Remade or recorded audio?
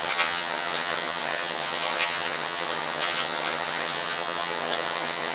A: remade